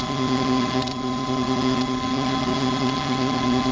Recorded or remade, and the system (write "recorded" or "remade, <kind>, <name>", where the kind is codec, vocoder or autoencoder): remade, vocoder, HiFi-GAN